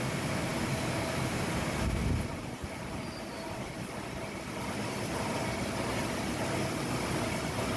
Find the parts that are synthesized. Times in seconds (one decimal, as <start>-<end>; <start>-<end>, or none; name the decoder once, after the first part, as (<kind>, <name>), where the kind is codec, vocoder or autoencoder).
0.5-2.0 (vocoder, BigVGAN v2)